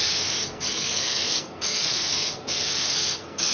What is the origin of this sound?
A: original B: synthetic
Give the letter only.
B